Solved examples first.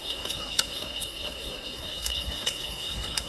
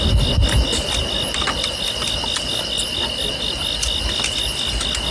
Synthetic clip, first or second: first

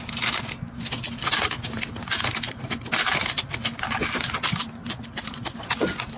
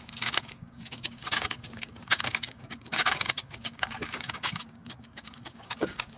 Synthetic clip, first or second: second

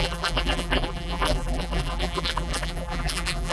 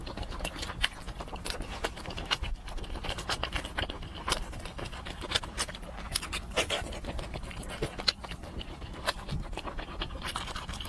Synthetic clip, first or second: first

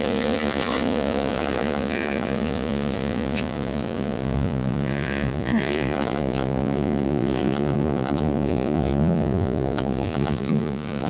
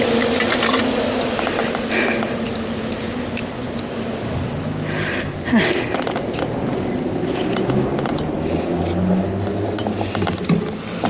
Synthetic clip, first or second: first